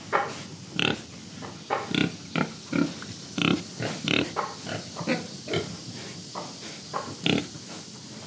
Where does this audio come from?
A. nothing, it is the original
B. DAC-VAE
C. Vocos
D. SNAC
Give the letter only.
A